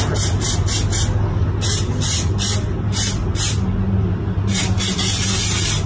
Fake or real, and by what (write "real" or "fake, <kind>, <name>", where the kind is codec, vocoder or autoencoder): real